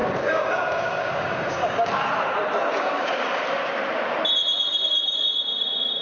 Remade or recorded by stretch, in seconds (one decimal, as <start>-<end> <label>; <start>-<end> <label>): 0.0-1.9 remade; 1.9-2.6 recorded; 2.6-3.4 remade; 3.4-6.0 recorded